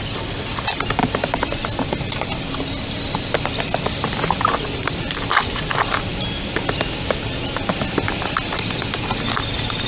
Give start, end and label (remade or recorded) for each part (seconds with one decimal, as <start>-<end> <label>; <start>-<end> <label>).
0.0-9.9 recorded